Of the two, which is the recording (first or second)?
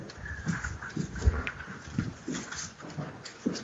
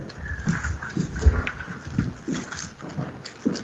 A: second